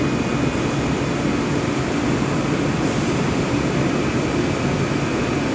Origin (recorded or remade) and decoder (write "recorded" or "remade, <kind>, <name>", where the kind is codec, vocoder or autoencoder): recorded